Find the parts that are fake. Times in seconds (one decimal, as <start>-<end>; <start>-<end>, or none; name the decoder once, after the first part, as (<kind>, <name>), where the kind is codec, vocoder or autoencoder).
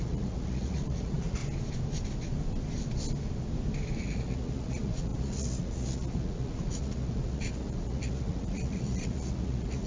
0.0-1.4 (vocoder, Vocos); 4.0-9.9